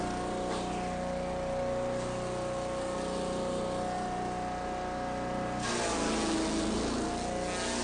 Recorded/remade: recorded